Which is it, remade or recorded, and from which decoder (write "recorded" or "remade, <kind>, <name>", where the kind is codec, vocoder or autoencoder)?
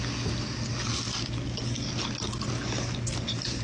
recorded